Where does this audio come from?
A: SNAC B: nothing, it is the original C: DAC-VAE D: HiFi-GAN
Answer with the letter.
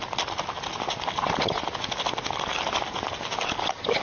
B